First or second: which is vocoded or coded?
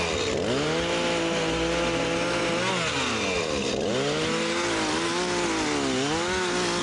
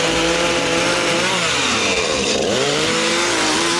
second